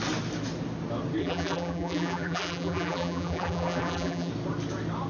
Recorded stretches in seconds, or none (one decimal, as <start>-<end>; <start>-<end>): 0.0-1.2; 4.3-5.1